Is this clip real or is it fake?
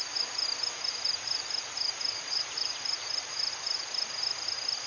real